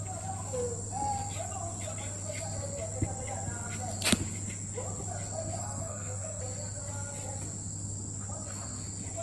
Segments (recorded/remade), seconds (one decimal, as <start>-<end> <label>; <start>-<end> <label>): 0.0-5.6 recorded; 5.6-6.4 remade; 6.4-9.2 recorded